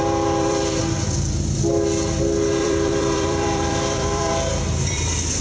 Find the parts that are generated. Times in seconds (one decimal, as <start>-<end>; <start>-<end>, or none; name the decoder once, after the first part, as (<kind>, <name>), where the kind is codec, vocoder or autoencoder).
0.0-0.8 (vocoder, BigVGAN v2); 2.6-5.4